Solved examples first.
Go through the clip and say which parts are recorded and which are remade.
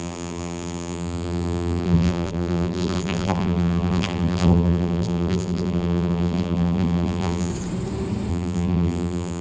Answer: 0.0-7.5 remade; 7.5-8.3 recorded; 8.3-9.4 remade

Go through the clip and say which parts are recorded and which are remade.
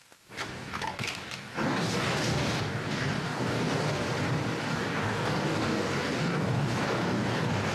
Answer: 0.0-4.0 remade; 4.0-4.6 recorded; 4.6-7.7 remade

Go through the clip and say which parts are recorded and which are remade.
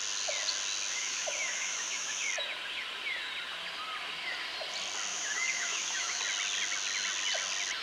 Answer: 0.0-0.9 recorded; 0.9-2.3 remade; 2.3-5.1 recorded; 5.1-6.2 remade; 6.2-7.8 recorded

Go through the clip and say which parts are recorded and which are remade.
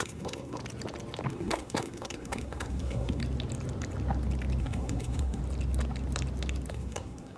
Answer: 0.0-0.6 remade; 0.6-1.3 recorded; 1.3-3.2 remade; 3.2-4.6 recorded; 4.6-5.4 remade; 5.4-6.7 recorded; 6.7-7.4 remade